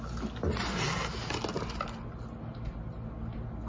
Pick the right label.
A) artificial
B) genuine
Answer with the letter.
B